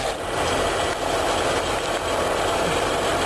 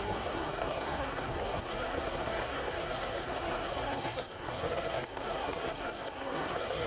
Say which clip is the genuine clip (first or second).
first